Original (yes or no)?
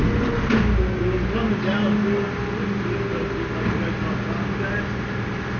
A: yes